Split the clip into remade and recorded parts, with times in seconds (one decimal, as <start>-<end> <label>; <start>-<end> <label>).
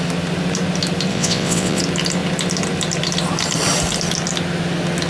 0.0-1.1 recorded; 1.1-1.8 remade; 1.8-5.1 recorded